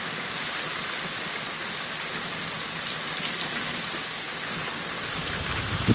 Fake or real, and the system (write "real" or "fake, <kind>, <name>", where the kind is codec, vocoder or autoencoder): real